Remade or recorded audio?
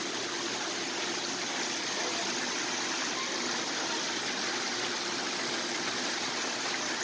recorded